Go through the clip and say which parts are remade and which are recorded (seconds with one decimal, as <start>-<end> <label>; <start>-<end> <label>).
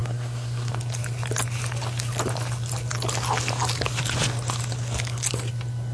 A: 0.0-0.7 remade; 0.7-5.9 recorded